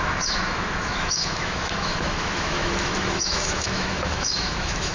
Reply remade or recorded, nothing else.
remade